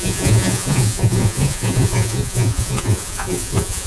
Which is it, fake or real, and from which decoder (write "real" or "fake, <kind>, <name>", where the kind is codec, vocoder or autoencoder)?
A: fake, vocoder, Vocos